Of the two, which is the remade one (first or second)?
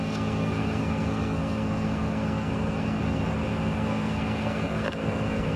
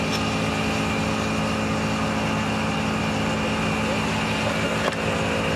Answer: first